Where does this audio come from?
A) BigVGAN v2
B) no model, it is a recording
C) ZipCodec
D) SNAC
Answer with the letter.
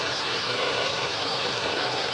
D